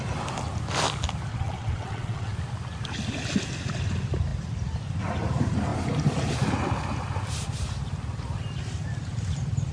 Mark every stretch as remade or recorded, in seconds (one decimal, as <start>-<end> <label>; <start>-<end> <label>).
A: 0.0-1.3 recorded; 1.3-2.3 remade; 2.3-9.7 recorded